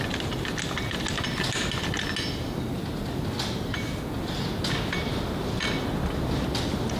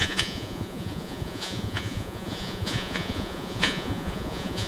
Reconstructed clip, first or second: second